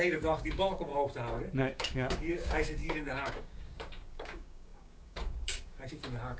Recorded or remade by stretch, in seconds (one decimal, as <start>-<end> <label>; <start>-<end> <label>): 0.0-0.9 remade; 0.9-1.6 recorded; 1.6-6.4 remade